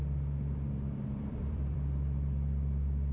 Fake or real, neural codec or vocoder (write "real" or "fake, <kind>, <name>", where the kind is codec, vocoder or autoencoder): fake, vocoder, BigVGAN v2